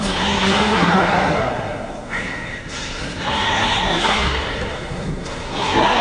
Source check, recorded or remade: remade